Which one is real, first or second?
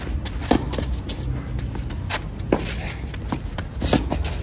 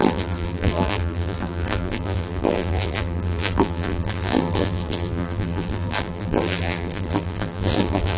first